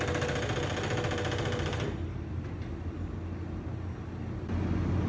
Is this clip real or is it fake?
real